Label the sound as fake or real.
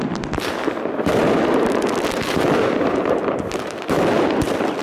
fake